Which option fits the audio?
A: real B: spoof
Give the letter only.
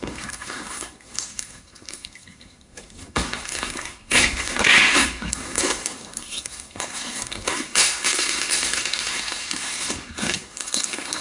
B